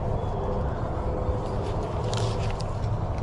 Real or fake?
real